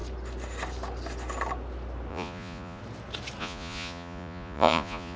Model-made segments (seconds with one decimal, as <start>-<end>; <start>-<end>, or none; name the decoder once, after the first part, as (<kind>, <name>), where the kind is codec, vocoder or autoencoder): 2.1-2.8 (vocoder, Vocos); 3.4-5.2